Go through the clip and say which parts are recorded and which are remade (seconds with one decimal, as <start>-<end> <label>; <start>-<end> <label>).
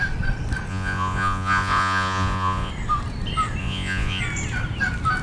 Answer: 0.0-0.7 recorded; 0.7-2.7 remade; 2.7-3.6 recorded; 3.6-4.2 remade; 4.2-5.2 recorded